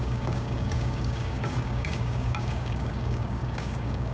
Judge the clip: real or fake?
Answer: fake